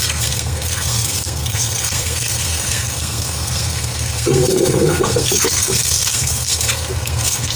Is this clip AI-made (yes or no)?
yes